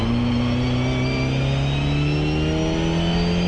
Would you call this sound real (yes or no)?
yes